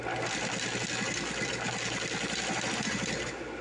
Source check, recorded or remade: recorded